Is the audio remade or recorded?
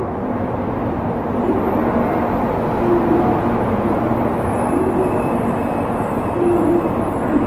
recorded